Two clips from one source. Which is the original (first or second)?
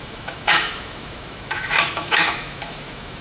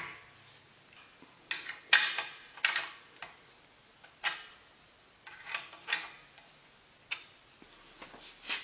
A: second